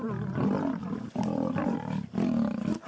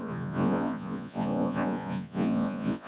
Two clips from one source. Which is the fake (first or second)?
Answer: second